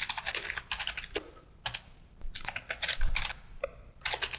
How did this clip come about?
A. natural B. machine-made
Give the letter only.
A